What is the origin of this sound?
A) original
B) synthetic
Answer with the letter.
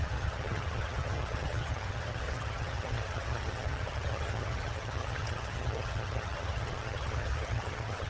B